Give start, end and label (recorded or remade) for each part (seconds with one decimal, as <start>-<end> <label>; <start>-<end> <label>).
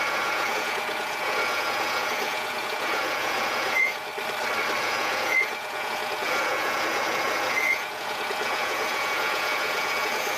0.0-4.1 remade; 4.1-4.8 recorded; 4.8-10.4 remade